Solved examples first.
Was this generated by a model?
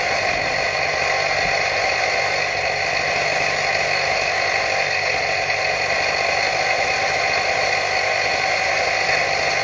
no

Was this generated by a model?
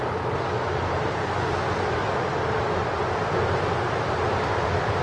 no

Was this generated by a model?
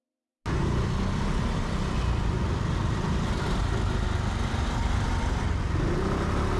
no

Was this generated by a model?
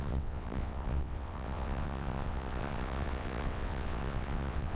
yes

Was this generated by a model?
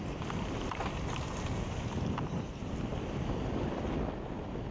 no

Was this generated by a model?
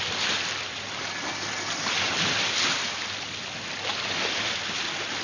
no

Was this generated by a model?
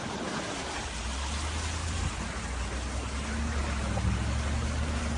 no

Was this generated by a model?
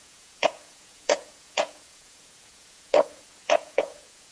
yes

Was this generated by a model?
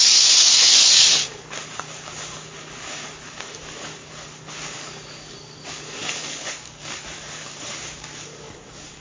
yes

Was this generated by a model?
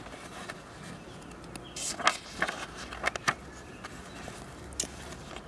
no